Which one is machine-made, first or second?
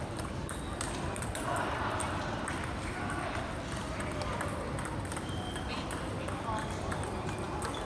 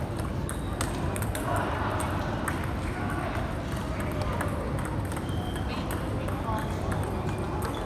first